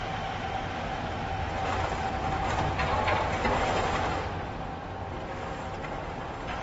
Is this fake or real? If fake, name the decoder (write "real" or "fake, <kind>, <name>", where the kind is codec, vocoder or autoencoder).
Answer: real